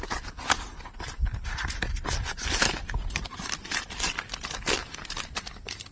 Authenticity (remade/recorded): recorded